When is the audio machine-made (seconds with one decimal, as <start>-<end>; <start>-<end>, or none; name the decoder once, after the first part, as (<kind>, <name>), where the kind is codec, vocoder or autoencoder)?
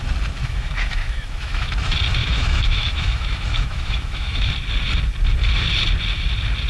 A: 0.4-1.7 (autoencoder, DAC-VAE); 2.2-4.5